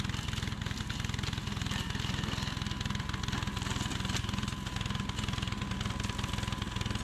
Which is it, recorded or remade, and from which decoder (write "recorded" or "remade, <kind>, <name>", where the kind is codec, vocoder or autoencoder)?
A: recorded